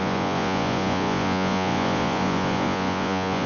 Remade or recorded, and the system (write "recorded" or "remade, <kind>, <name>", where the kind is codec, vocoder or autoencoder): remade, vocoder, Vocos